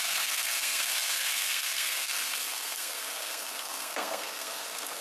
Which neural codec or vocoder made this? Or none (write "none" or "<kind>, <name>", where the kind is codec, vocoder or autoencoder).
codec, SNAC